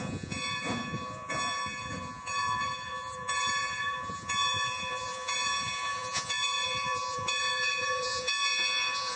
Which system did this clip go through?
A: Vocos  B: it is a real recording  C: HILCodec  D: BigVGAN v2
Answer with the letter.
A